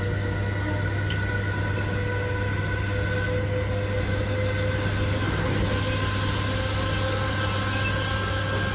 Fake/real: real